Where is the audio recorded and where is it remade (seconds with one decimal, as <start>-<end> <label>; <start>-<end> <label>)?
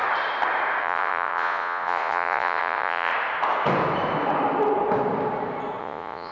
0.0-0.8 recorded; 0.8-3.1 remade; 3.1-5.8 recorded; 5.8-6.3 remade